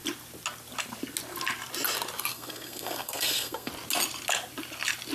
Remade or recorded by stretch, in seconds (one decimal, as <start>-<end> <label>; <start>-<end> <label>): 0.0-2.3 recorded; 2.3-3.7 remade; 3.7-5.1 recorded